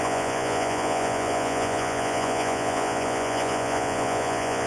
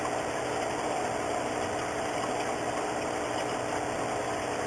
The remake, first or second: first